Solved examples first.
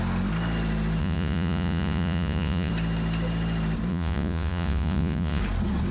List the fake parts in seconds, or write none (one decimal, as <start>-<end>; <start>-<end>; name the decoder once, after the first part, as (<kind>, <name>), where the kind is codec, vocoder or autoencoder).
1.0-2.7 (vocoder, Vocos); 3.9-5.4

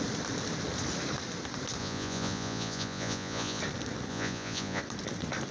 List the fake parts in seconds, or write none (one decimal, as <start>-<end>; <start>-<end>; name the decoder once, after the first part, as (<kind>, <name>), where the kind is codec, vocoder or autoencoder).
1.8-3.6 (vocoder, Vocos); 4.1-4.8

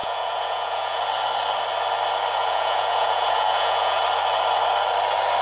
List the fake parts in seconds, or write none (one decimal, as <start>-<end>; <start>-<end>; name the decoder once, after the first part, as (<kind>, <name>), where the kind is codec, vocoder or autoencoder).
0.0-1.0 (vocoder, Vocos); 2.4-4.0

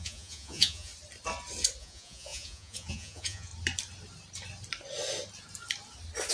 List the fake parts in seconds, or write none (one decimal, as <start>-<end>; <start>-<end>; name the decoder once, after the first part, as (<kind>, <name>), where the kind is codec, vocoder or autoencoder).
0.0-0.9 (vocoder, Vocos); 1.8-3.5

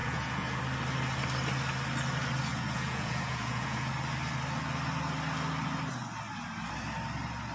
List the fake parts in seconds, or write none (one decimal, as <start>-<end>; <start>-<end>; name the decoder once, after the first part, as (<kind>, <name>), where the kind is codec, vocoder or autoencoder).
0.0-0.6 (vocoder, Vocos); 2.5-3.9

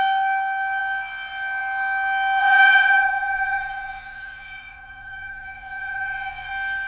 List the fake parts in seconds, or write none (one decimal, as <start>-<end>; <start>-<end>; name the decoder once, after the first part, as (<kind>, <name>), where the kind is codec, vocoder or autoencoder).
2.4-6.5 (vocoder, Vocos)